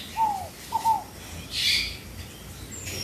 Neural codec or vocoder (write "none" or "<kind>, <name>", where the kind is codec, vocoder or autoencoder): none